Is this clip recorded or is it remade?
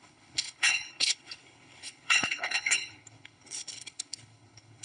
remade